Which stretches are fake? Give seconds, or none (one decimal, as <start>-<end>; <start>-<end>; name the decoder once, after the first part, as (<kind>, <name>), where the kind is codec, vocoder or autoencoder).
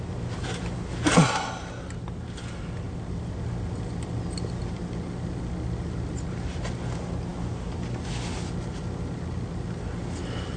none